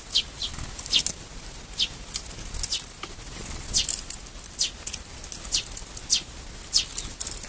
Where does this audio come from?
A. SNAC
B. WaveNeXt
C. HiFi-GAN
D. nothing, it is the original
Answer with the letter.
D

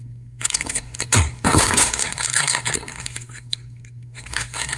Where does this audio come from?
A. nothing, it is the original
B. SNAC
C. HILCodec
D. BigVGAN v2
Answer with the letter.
B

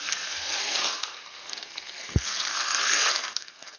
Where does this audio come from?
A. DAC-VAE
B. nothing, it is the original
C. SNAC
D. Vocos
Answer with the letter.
C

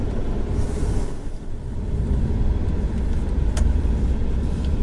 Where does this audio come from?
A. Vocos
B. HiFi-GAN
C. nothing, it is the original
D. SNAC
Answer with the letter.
C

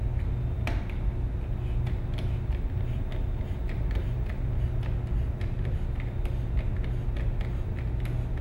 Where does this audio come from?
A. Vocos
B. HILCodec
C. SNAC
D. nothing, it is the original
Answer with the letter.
D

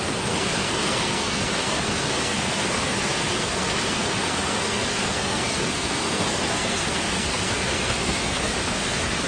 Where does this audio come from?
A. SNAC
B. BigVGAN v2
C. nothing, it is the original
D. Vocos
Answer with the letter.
A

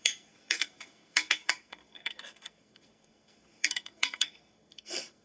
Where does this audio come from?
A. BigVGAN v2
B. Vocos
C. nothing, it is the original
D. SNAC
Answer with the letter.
D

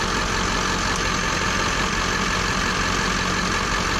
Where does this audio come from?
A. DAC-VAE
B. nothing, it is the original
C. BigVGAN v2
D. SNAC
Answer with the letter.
B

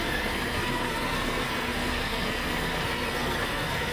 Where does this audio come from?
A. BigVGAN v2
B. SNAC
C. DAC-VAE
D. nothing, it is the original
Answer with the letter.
B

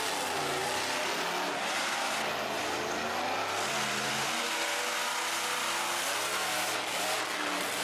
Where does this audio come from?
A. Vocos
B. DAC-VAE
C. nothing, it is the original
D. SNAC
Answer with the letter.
C